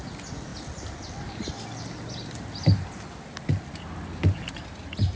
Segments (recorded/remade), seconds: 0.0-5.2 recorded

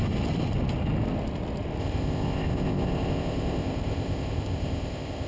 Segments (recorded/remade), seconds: 0.0-1.8 recorded; 1.8-5.3 remade

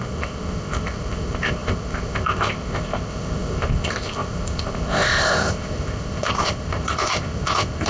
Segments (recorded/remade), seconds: 0.0-7.9 remade

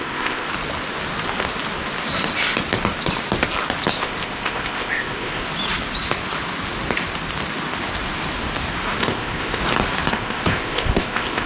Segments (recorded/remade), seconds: 0.0-0.5 remade; 0.5-3.9 recorded; 3.9-5.4 remade; 5.4-9.0 recorded; 9.0-9.6 remade; 9.6-10.1 recorded; 10.1-11.5 remade

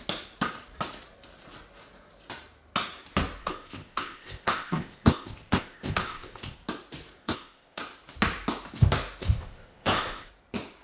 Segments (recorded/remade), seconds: 0.0-3.4 recorded; 3.4-6.6 remade; 6.6-7.2 recorded; 7.2-7.8 remade; 7.8-9.2 recorded; 9.2-10.3 remade; 10.3-10.8 recorded